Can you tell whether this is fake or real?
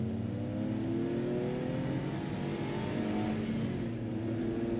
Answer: real